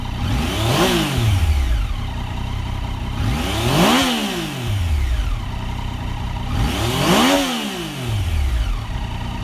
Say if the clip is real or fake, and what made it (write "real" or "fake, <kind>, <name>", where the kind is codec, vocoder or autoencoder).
real